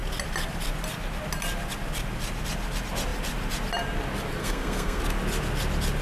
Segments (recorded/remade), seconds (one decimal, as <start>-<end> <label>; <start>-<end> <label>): 0.0-4.4 recorded; 4.4-5.0 remade; 5.0-6.0 recorded